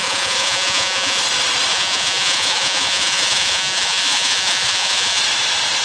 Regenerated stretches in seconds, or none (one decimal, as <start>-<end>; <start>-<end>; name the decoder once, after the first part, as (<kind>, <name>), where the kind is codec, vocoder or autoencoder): 0.0-1.2 (vocoder, Vocos); 1.7-5.2